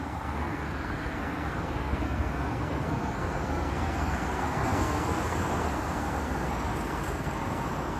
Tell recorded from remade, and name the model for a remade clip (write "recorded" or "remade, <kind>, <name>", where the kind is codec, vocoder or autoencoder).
remade, codec, SNAC